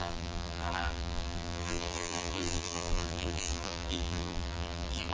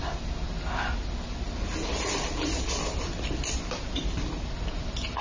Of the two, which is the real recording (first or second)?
second